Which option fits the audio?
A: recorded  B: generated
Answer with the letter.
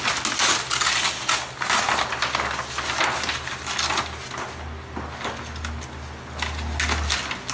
A